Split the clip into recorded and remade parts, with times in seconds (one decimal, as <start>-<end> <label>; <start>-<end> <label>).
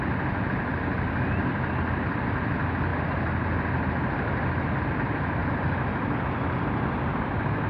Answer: 0.0-7.7 recorded